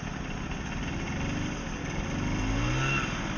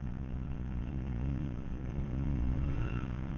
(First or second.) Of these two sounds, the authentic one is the first